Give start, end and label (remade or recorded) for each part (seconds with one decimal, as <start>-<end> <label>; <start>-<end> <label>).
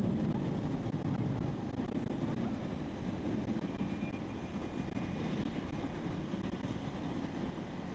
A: 0.0-7.9 recorded